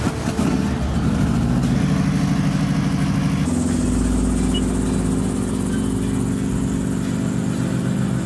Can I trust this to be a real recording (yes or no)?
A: yes